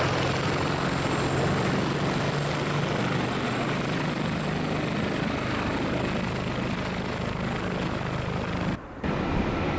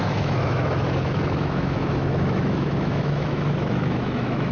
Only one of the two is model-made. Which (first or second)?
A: second